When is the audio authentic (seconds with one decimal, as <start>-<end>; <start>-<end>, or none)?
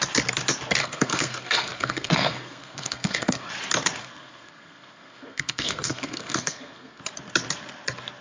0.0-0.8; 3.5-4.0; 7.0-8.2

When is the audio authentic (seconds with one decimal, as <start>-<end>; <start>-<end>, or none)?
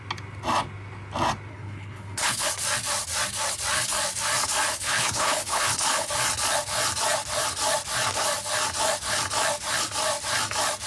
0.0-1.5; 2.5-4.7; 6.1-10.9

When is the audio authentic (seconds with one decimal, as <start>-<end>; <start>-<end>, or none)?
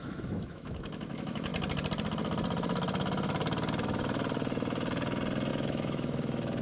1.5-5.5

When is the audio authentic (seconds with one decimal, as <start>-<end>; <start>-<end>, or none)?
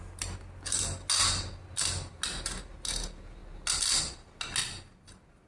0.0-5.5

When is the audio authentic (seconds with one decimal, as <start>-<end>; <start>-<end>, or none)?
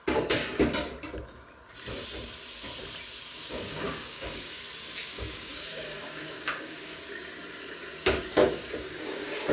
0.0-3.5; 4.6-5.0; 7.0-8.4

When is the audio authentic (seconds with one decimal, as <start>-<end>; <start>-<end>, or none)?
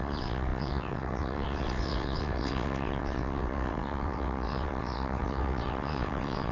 none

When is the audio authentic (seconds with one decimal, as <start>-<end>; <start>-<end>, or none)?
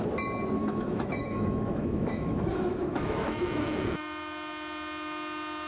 0.0-0.6; 4.0-5.7